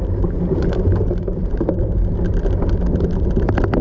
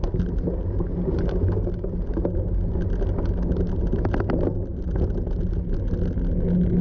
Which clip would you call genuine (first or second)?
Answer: second